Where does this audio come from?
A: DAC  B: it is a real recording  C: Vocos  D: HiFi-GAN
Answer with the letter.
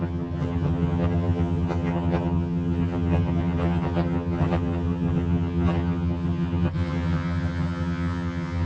D